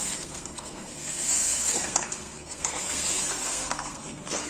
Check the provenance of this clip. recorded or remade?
remade